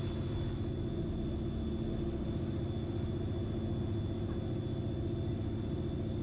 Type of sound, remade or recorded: recorded